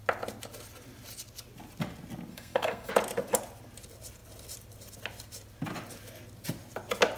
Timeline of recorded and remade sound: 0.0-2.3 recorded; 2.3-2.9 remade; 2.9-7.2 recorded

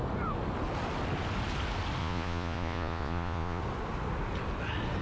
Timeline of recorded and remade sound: 0.0-2.0 recorded; 2.0-3.6 remade; 3.6-5.0 recorded